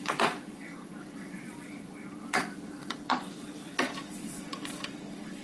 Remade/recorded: remade